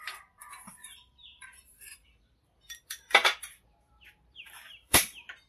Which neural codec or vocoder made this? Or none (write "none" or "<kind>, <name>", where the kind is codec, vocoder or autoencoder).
vocoder, BigVGAN v2